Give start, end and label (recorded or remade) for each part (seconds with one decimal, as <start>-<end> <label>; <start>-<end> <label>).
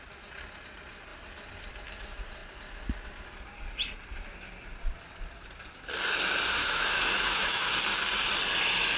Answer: 0.0-6.6 recorded; 6.6-7.7 remade; 7.7-9.0 recorded